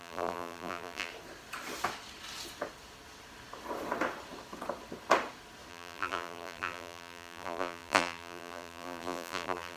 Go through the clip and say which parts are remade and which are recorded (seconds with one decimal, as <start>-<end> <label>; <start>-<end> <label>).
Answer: 0.0-1.1 remade; 1.1-5.7 recorded; 5.7-9.8 remade